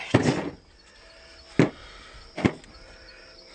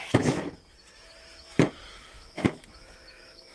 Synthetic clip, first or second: second